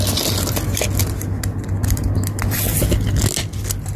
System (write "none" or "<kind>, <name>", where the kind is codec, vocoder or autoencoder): none